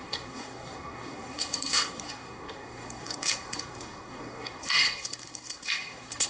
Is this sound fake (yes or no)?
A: yes